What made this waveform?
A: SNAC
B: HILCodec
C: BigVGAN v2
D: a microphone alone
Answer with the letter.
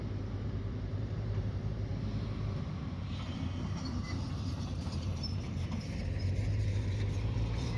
C